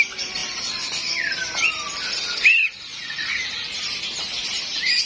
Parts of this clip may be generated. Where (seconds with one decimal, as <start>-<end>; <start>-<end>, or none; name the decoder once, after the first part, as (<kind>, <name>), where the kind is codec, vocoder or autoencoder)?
2.9-3.8 (vocoder, Vocos)